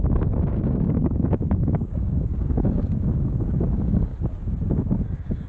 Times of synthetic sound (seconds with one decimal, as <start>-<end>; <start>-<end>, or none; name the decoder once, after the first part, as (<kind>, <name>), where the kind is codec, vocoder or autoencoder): 0.0-4.1 (codec, DAC); 4.7-5.5